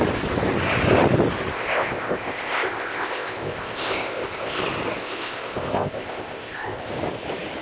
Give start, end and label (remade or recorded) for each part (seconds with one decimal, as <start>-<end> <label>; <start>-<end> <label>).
0.0-1.5 recorded; 1.5-4.6 remade; 4.6-5.0 recorded; 5.0-6.9 remade; 6.9-7.6 recorded